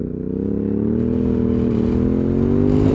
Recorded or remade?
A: recorded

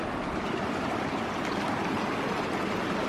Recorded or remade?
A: recorded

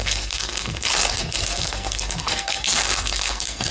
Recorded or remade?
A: remade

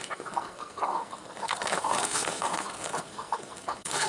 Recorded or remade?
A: remade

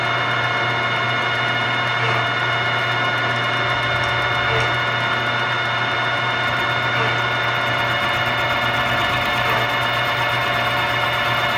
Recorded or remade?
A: recorded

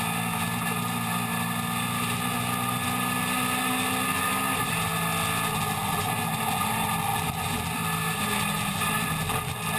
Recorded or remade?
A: recorded